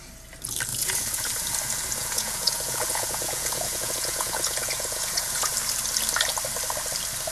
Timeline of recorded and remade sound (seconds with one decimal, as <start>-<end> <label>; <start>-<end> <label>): 0.0-0.7 recorded; 0.7-1.3 remade; 1.3-2.0 recorded; 2.0-5.5 remade; 5.5-7.3 recorded